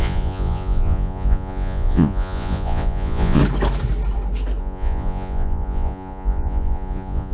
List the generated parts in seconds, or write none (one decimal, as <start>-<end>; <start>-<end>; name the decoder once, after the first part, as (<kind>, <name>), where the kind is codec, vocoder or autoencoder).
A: 0.0-3.4 (vocoder, Vocos); 4.6-7.3